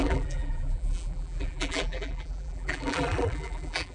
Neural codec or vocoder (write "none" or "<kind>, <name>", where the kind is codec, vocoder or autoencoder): vocoder, BigVGAN v2